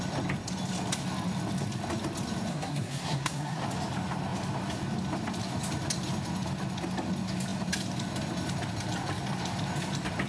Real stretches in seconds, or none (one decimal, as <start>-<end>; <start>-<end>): 0.0-2.5; 3.6-10.3